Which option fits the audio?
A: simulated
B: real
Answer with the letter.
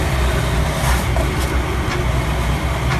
B